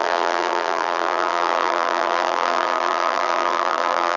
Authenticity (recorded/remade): remade